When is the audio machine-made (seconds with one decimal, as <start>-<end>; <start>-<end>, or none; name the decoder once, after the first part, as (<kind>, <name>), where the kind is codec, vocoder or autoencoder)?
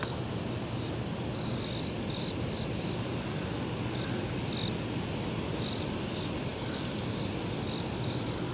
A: none